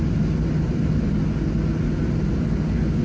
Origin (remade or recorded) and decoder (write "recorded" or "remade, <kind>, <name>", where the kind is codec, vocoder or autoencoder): recorded